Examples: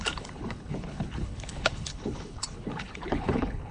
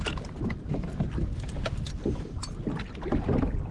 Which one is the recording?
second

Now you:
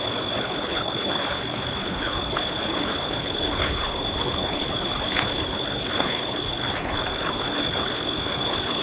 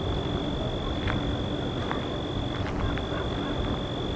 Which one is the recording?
second